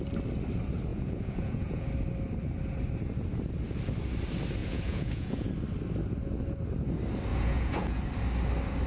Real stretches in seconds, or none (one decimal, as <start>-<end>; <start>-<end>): 0.0-0.9; 1.9-4.6; 5.5-7.3; 8.0-8.9